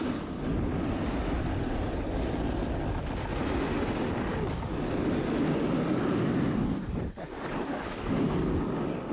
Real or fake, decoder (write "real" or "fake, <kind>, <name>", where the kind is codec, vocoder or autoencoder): real